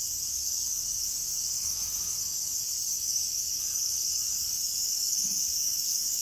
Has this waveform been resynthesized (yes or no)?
yes